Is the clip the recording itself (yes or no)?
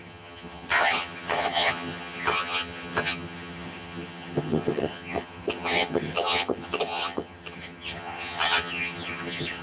no